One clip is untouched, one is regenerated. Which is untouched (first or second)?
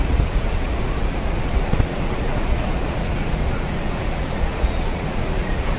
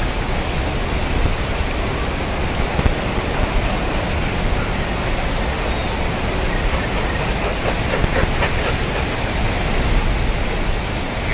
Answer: second